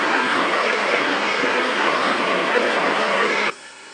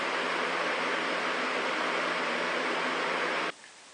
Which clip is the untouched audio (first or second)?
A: second